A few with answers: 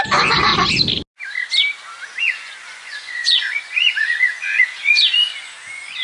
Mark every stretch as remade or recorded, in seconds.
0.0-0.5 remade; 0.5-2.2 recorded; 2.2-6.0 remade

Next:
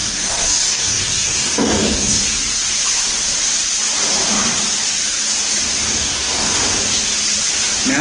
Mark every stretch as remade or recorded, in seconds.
0.0-2.2 remade; 2.2-5.9 recorded; 5.9-6.6 remade; 6.6-8.0 recorded